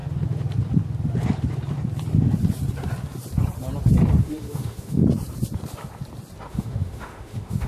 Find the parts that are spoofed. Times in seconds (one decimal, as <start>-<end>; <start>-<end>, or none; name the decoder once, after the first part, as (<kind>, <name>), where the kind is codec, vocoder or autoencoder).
4.2-5.0 (autoencoder, DAC-VAE); 6.5-7.7